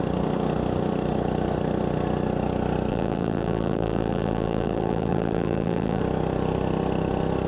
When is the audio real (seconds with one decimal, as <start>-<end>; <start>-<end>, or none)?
0.0-2.9; 6.0-7.5